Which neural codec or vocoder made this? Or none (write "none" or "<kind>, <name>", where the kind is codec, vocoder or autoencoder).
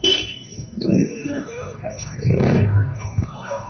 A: codec, DAC